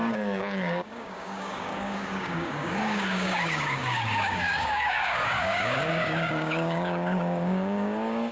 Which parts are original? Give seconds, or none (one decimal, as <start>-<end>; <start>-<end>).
none